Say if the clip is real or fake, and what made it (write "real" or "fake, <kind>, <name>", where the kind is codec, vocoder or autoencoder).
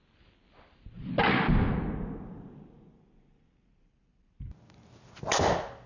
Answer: real